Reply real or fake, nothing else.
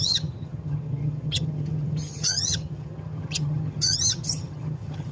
fake